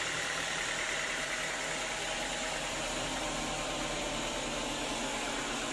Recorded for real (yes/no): yes